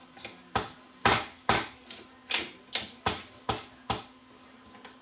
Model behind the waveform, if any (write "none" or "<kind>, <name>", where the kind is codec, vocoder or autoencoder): none